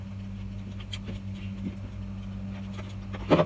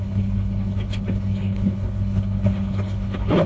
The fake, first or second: second